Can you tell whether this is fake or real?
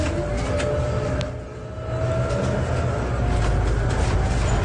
real